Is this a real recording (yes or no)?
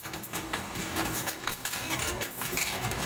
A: no